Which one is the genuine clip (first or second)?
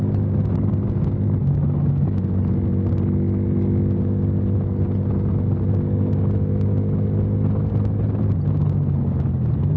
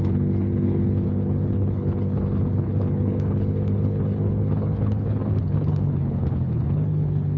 first